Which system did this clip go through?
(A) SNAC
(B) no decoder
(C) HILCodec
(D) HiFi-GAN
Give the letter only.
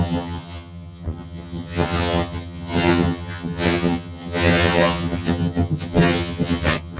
D